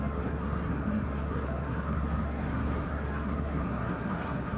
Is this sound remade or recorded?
remade